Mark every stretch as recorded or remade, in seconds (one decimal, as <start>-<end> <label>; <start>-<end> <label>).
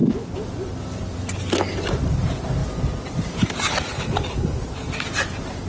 0.0-3.9 recorded; 3.9-4.6 remade; 4.6-5.7 recorded